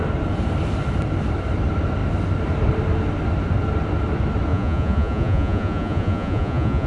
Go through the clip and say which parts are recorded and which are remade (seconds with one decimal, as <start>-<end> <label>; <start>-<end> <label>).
0.0-4.5 recorded; 4.5-6.9 remade